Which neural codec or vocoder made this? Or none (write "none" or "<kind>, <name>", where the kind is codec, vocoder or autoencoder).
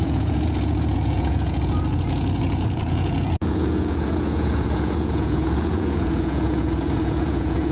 vocoder, Vocos